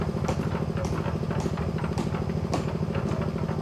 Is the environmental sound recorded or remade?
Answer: recorded